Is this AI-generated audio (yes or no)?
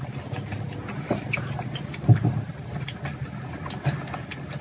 no